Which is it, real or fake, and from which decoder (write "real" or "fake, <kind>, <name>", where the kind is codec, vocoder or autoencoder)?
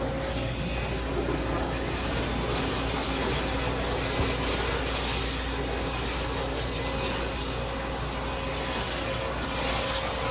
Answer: real